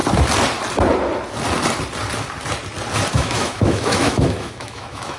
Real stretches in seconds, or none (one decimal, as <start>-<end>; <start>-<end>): 0.0-3.1